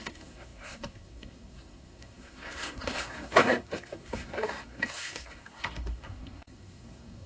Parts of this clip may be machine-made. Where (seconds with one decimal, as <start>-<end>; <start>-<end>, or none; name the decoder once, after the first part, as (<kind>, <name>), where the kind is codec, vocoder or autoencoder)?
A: 0.0-7.3 (codec, SNAC)